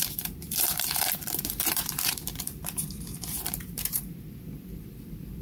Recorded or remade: remade